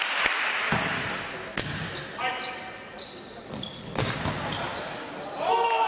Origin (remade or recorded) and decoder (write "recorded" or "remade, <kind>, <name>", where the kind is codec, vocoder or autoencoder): recorded